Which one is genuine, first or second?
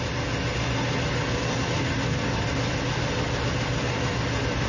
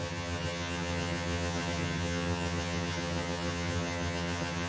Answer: first